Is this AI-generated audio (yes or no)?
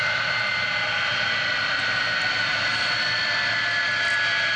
no